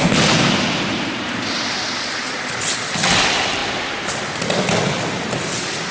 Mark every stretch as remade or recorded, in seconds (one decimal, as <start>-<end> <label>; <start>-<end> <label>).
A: 0.0-5.9 recorded